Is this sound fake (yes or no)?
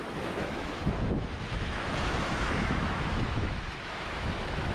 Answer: yes